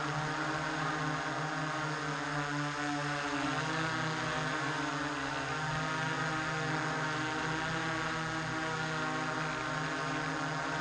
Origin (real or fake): real